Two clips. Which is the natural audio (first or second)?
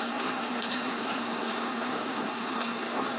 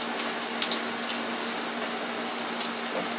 second